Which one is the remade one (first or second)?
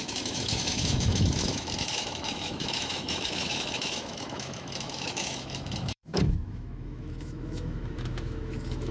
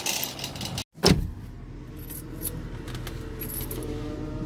first